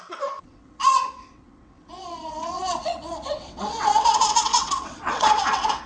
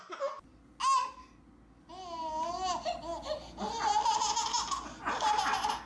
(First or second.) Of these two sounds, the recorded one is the second